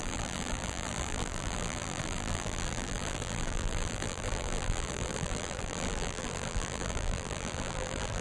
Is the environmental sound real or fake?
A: fake